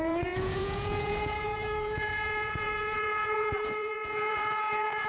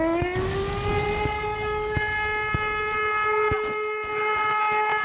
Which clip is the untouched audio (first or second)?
second